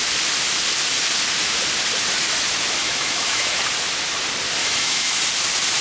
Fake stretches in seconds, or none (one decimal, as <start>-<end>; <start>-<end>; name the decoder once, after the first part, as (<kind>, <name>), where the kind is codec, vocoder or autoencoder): 2.8-3.6 (autoencoder, DAC-VAE); 4.6-5.2